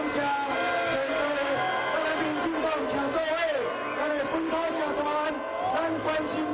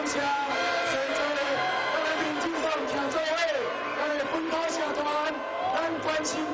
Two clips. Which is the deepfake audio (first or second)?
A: second